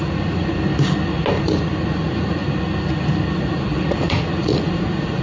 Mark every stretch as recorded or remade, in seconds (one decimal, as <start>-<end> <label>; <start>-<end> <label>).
0.0-0.7 remade; 0.7-1.3 recorded; 1.3-2.4 remade; 2.4-3.4 recorded; 3.4-5.2 remade